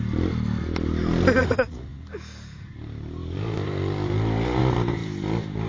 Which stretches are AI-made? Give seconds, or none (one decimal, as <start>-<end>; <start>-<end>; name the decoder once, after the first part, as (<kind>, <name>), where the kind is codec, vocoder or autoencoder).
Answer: 1.4-2.0 (vocoder, Vocos)